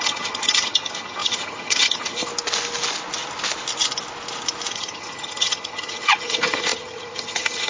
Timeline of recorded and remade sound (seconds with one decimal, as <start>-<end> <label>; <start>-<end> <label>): 0.0-2.3 remade; 2.3-4.7 recorded; 4.7-7.7 remade